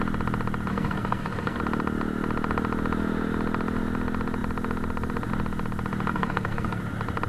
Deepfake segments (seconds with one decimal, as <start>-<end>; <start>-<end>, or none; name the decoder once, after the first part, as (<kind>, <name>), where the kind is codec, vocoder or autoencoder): 0.7-1.6 (codec, SNAC); 6.1-6.8